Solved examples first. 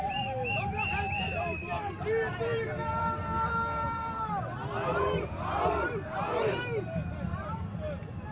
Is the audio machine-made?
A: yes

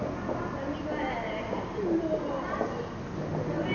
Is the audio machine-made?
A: no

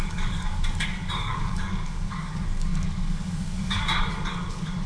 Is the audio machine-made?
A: yes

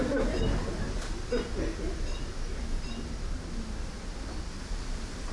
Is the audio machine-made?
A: no